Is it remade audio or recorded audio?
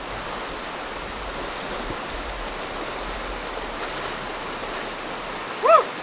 recorded